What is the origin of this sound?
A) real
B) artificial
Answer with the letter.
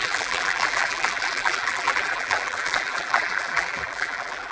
B